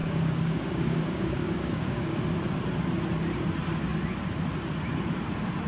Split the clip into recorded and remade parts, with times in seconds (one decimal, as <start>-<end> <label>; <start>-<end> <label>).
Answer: 0.0-2.2 remade; 2.2-5.7 recorded